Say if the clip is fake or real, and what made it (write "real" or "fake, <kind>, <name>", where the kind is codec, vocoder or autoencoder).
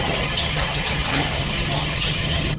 fake, vocoder, HiFi-GAN